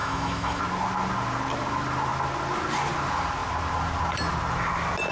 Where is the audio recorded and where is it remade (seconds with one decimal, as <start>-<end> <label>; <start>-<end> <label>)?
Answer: 0.0-0.6 remade; 0.6-5.1 recorded